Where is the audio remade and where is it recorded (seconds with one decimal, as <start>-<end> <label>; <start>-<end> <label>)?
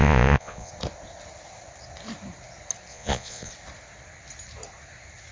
0.0-0.7 remade; 0.7-2.9 recorded; 2.9-3.5 remade; 3.5-5.3 recorded